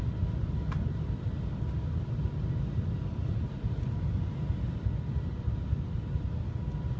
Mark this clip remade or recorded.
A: recorded